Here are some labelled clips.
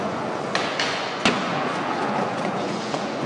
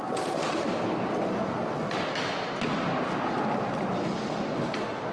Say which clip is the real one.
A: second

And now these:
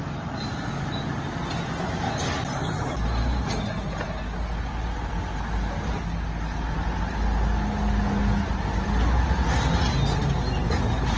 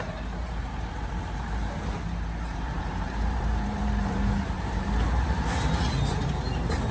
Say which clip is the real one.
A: first